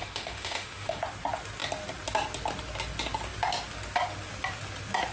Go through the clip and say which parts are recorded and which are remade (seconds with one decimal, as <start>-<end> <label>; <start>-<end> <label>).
0.0-1.0 remade; 1.0-5.1 recorded